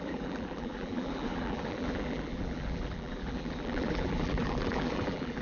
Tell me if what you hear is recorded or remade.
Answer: remade